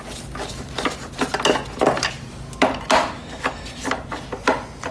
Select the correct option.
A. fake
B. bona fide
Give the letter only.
B